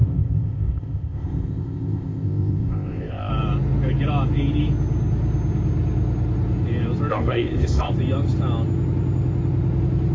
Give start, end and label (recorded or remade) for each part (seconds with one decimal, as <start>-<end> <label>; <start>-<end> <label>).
0.0-3.3 remade; 3.3-7.1 recorded; 7.1-7.9 remade; 7.9-10.1 recorded